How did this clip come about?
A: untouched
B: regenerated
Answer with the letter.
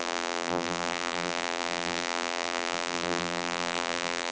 B